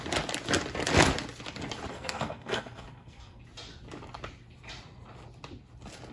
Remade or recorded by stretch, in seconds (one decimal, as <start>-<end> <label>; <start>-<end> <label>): 0.0-1.9 recorded; 1.9-3.4 remade; 3.4-6.1 recorded